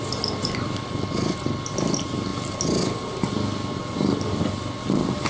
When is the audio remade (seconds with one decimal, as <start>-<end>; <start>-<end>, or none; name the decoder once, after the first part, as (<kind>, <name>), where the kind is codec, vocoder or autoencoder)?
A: none